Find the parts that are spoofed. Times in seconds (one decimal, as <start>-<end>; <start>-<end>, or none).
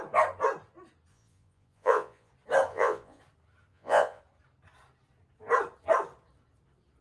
1.1-2.3; 2.7-3.2; 3.7-4.2